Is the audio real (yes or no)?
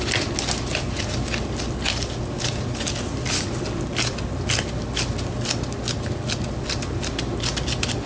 yes